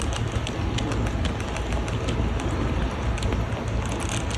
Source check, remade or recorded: recorded